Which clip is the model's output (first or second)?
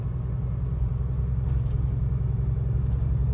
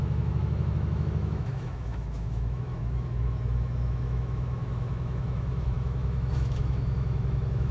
second